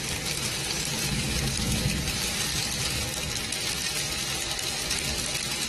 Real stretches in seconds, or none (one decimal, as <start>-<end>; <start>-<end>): 0.0-1.1; 1.9-5.7